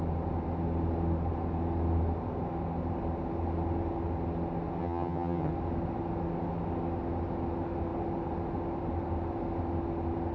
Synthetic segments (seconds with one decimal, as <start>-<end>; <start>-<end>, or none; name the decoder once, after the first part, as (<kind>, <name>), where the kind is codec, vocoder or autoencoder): 4.8-5.5 (vocoder, HiFi-GAN)

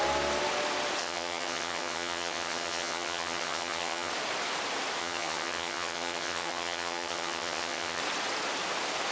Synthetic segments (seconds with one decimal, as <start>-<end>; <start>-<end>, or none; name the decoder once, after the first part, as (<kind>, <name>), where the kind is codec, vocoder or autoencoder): 1.0-4.1 (vocoder, HiFi-GAN); 5.0-8.0

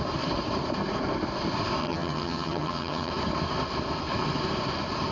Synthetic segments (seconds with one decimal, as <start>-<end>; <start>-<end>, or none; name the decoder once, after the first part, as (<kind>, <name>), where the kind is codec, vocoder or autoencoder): 1.8-3.1 (vocoder, HiFi-GAN)

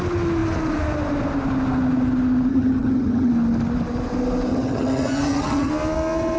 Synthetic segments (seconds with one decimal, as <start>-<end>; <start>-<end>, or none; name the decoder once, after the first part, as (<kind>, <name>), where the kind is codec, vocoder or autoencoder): 2.5-3.3 (vocoder, HiFi-GAN); 4.5-5.7

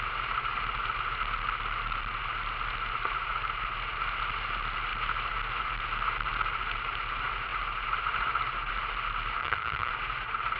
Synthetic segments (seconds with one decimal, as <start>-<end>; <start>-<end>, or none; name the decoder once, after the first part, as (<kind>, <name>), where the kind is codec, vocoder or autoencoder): 9.4-9.9 (vocoder, HiFi-GAN)

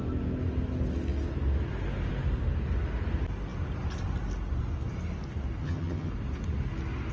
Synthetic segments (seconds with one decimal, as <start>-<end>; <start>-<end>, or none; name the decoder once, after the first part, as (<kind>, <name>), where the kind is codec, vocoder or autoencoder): 5.6-6.1 (vocoder, HiFi-GAN)

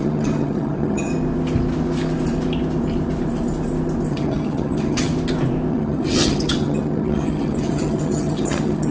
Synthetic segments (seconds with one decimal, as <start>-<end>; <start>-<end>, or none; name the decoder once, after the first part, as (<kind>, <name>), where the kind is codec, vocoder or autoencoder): 0.0-1.1 (vocoder, HiFi-GAN); 4.1-5.1; 5.7-8.9

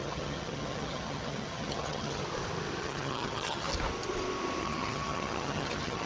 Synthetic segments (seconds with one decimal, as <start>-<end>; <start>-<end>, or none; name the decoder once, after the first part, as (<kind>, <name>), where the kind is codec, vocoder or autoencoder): 0.0-2.2 (vocoder, HiFi-GAN); 2.8-3.7; 4.6-6.1